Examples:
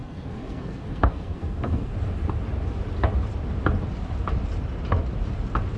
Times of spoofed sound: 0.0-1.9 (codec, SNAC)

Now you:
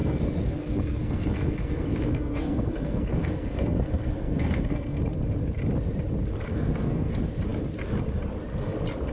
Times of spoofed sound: 0.0-5.0 (codec, SNAC); 6.5-7.1

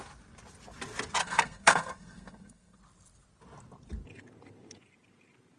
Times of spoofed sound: 1.2-2.8 (codec, SNAC)

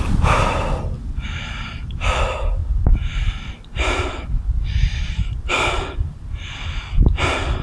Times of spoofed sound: none

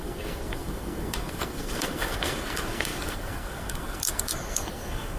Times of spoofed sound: 0.0-5.2 (codec, SNAC)

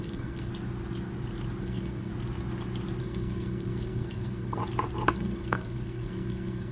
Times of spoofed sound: 0.0-0.5 (codec, SNAC); 1.6-2.1; 3.0-4.6; 5.1-6.7

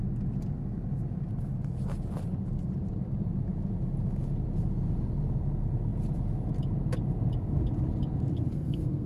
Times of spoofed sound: 8.5-9.1 (codec, SNAC)

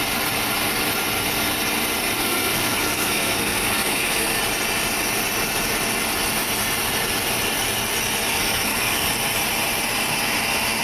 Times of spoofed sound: 2.2-4.4 (codec, SNAC); 8.3-9.1